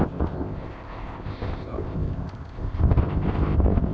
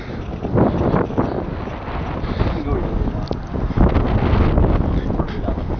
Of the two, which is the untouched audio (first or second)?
second